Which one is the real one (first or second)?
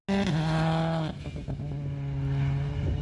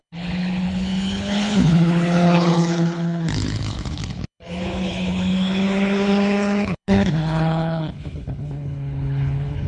first